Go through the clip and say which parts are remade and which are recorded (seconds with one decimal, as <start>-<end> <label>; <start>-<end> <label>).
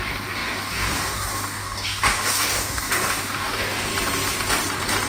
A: 0.0-3.9 remade; 3.9-5.1 recorded